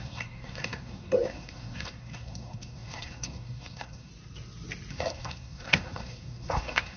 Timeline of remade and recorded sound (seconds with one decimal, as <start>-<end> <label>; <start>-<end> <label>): 0.0-4.1 remade; 4.1-4.9 recorded; 4.9-7.0 remade